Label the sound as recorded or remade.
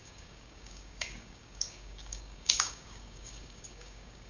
remade